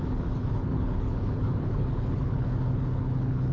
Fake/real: fake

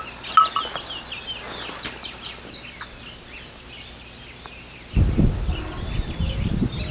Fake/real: real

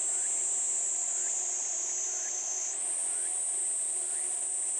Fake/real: real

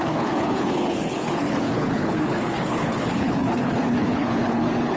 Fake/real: fake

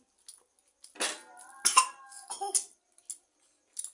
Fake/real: real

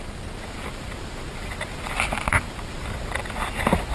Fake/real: real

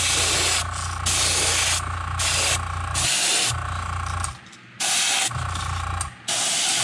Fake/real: real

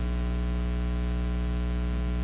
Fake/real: real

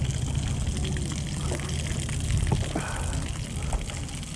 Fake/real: real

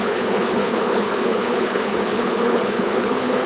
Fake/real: fake